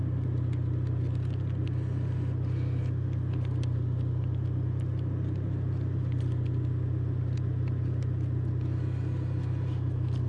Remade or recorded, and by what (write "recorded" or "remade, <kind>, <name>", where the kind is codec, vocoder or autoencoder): recorded